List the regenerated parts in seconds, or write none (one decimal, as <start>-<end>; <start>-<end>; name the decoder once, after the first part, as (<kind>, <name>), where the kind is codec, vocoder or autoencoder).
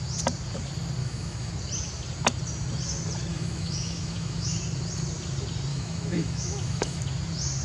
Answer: 1.0-1.5 (autoencoder, DAC-VAE); 3.3-4.6; 5.7-7.0